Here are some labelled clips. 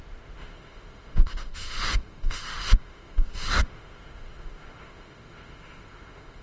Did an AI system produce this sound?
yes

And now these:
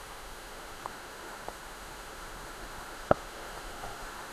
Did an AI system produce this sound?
yes